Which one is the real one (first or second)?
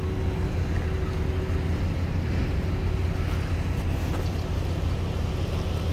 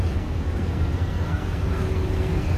first